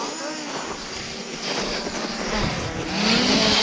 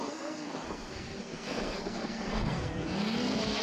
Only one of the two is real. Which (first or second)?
first